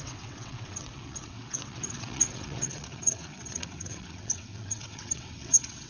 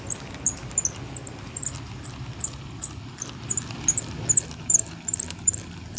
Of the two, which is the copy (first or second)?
first